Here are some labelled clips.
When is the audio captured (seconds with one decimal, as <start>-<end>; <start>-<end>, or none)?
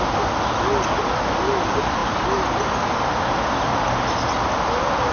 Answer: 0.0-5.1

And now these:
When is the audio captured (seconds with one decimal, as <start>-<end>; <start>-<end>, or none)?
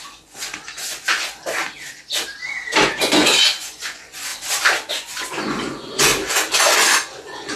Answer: 1.4-3.0; 4.3-4.9; 6.1-6.6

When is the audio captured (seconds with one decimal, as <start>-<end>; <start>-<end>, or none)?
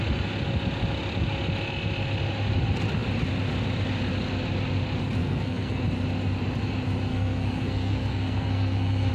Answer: 0.0-5.2; 5.8-7.1